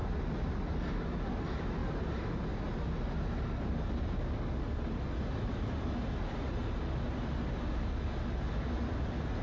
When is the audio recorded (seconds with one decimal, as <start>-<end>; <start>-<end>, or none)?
0.0-9.4